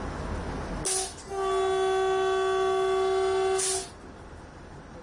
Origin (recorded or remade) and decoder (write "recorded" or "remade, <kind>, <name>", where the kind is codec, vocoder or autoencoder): recorded